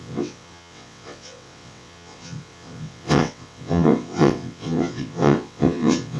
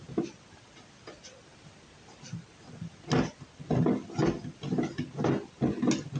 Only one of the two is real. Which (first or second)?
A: second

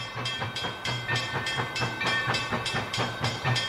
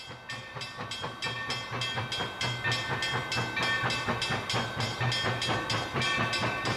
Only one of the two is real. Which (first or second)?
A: second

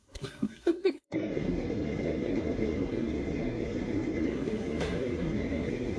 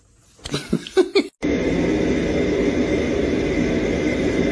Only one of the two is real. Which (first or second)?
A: second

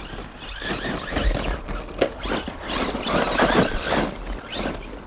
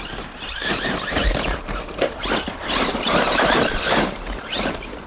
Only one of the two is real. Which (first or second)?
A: first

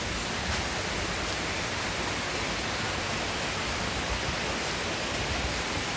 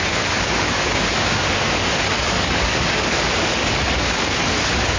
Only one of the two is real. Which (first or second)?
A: first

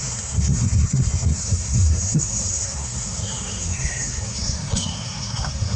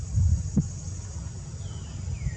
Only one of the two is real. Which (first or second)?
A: second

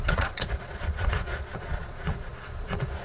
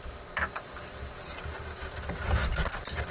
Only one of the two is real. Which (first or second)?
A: second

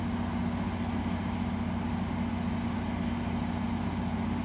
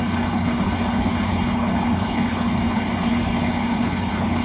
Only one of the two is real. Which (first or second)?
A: first